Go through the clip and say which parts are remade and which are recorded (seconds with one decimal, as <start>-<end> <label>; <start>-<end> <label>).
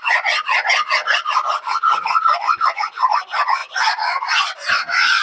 0.0-2.3 recorded; 2.3-2.9 remade; 2.9-5.2 recorded